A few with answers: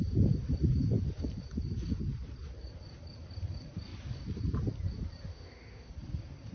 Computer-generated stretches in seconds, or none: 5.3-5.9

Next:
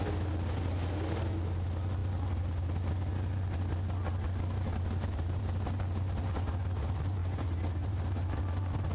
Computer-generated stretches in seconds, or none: 4.7-5.4; 7.2-8.4

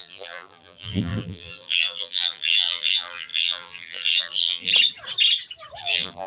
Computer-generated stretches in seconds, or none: 0.0-4.7; 5.8-6.3